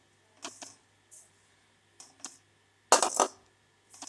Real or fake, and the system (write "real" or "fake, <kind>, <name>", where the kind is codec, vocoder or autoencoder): real